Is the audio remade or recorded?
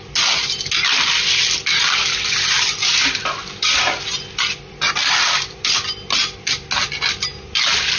recorded